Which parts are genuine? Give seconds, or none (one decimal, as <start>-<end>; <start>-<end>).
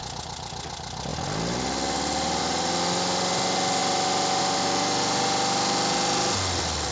0.0-6.9